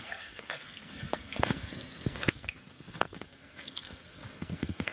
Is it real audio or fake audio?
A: fake